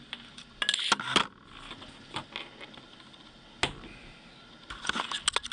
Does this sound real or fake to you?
real